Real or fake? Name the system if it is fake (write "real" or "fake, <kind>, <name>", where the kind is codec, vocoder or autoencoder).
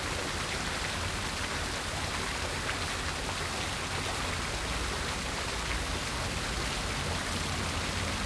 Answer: real